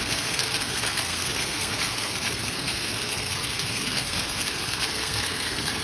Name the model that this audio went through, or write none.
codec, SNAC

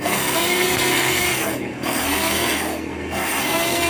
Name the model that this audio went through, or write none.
codec, SNAC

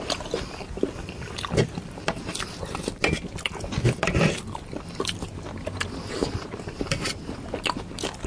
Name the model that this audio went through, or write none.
none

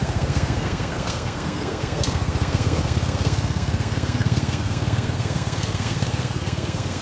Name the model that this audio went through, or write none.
codec, SNAC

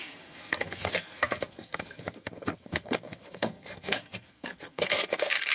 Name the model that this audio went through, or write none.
codec, SNAC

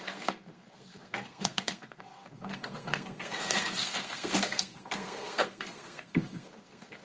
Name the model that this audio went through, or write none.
codec, SNAC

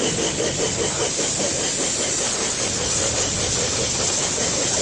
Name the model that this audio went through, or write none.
none